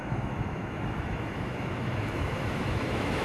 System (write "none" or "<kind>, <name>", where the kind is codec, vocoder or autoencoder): autoencoder, DAC-VAE